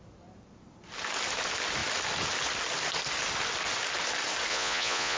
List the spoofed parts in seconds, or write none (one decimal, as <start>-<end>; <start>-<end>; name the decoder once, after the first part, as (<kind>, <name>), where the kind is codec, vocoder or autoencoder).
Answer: 4.5-5.2 (vocoder, Vocos)